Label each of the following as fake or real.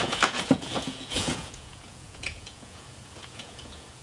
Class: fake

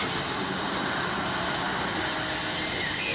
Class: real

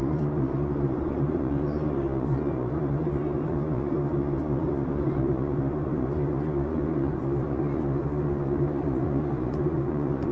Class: fake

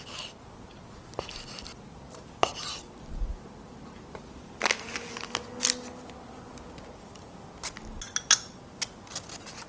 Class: real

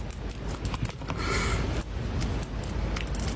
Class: real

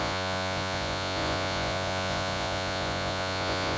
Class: fake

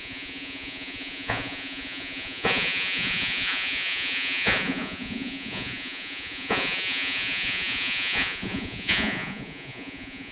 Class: fake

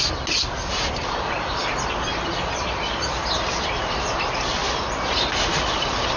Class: real